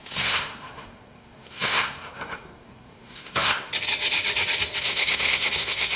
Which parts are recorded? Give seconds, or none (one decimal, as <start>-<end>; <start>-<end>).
3.7-4.8